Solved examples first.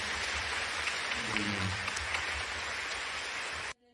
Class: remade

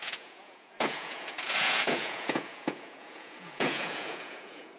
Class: remade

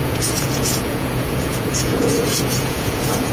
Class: remade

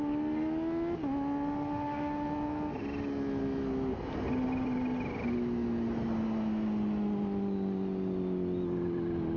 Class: recorded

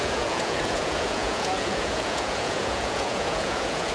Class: remade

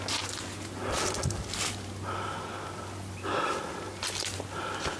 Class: recorded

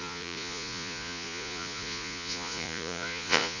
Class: remade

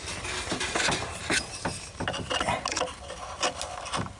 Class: recorded